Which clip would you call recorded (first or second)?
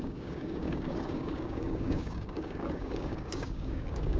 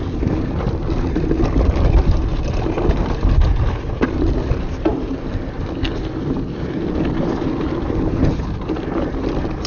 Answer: second